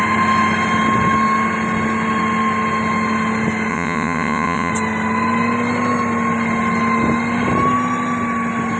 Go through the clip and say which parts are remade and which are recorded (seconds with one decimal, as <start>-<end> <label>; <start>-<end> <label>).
0.0-3.7 recorded; 3.7-4.7 remade; 4.7-8.8 recorded